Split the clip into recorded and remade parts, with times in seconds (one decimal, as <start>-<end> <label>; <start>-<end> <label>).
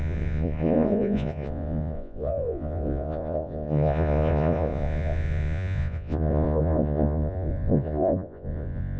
0.0-9.0 remade